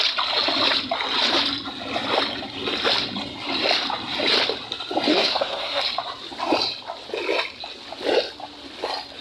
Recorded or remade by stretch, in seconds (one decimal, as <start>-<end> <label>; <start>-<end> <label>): 0.0-5.1 recorded; 5.1-5.8 remade; 5.8-9.2 recorded